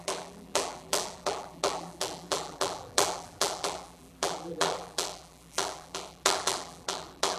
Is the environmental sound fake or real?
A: fake